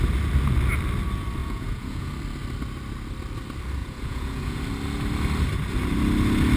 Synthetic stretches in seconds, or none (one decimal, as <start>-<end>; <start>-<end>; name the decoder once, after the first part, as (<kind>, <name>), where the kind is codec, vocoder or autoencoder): 1.4-2.1 (vocoder, Vocos); 3.8-4.6